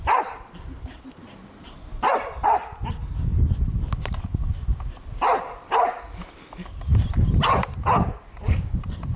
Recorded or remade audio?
recorded